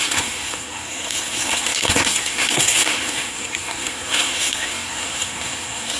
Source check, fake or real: fake